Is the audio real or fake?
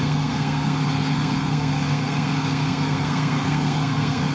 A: fake